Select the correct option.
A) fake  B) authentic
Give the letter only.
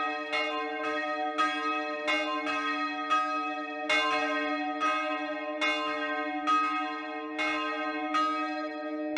B